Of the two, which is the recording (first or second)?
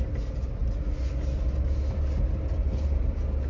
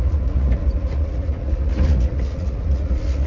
first